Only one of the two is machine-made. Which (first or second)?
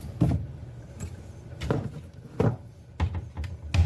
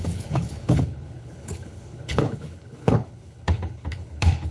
second